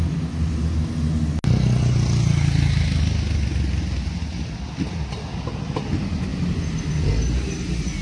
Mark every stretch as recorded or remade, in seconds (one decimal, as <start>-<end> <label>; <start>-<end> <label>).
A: 0.0-8.0 recorded